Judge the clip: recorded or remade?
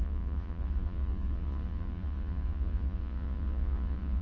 remade